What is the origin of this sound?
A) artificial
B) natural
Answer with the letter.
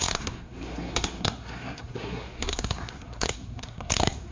A